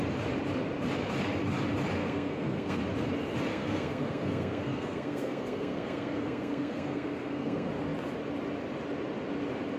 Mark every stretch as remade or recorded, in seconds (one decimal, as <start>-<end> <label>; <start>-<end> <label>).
0.0-2.0 recorded; 2.0-2.8 remade; 2.8-3.5 recorded; 3.5-7.7 remade; 7.7-9.8 recorded